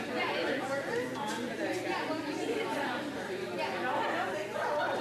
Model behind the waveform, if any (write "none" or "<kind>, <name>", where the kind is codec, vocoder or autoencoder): none